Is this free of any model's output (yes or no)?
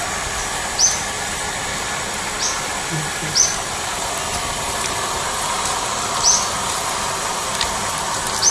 yes